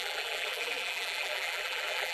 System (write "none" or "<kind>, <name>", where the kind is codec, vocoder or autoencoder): vocoder, BigVGAN v2